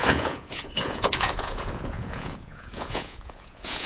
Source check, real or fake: fake